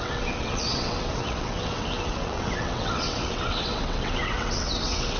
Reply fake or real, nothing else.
fake